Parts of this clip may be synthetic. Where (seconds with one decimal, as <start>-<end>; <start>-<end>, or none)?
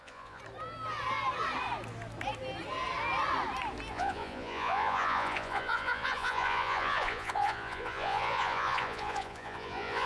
0.0-0.4; 3.9-10.1